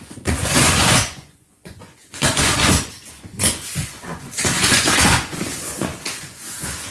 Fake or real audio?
fake